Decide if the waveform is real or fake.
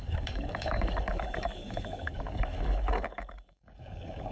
fake